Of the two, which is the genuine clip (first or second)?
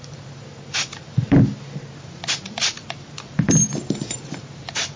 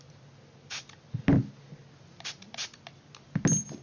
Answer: second